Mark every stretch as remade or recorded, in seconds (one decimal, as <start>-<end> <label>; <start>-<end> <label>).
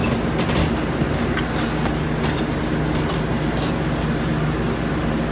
0.0-5.3 recorded